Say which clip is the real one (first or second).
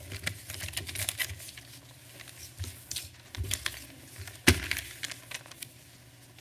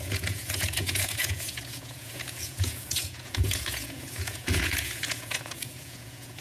first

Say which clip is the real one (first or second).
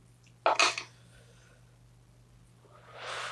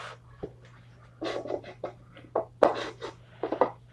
first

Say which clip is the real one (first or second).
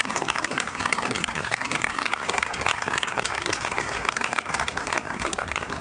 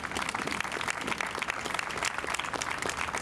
second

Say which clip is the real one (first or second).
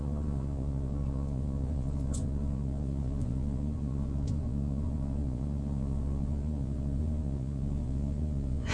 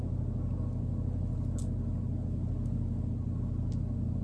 second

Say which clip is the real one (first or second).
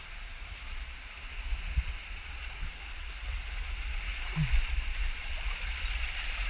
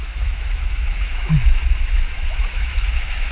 first